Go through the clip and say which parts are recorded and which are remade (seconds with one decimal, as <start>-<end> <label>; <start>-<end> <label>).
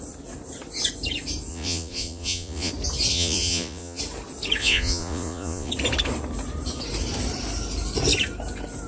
0.0-1.5 recorded; 1.5-2.7 remade; 2.7-3.1 recorded; 3.1-4.0 remade; 4.0-4.6 recorded; 4.6-5.7 remade; 5.7-8.9 recorded